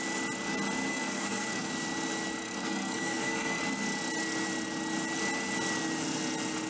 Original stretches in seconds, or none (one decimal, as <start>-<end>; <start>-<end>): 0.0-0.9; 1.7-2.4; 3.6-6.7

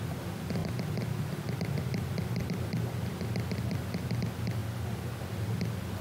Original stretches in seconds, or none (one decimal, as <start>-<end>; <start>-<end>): 0.0-0.6; 1.2-2.4; 3.0-4.6; 5.2-6.0

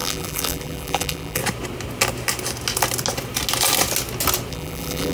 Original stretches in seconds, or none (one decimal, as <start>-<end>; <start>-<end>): 1.4-4.5

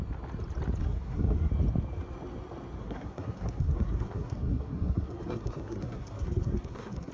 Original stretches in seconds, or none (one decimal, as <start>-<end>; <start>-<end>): 0.0-0.8; 1.5-2.8

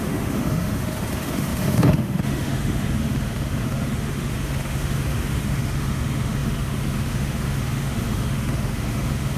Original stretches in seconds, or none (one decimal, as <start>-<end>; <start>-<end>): none

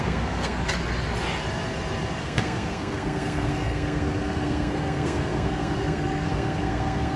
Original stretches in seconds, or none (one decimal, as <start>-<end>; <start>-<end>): 0.6-2.2

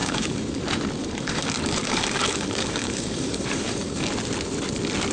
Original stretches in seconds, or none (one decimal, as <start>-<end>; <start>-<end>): 0.6-1.0; 4.1-5.1

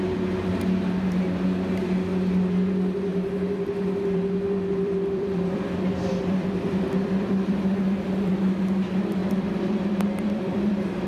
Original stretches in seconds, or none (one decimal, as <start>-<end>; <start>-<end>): 0.0-3.1; 8.3-9.2